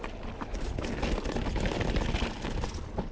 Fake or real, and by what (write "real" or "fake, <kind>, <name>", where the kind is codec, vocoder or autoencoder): real